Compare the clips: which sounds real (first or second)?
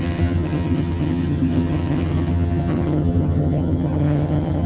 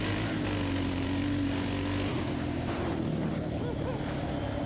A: second